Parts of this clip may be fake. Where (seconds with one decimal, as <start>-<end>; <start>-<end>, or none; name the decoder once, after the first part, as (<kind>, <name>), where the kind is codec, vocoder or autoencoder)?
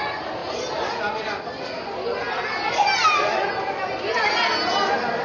none